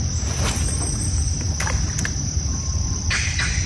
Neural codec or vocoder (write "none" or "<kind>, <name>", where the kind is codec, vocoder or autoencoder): vocoder, BigVGAN v2